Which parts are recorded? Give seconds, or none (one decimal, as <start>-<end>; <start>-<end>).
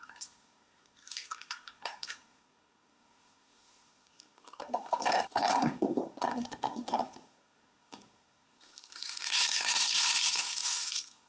none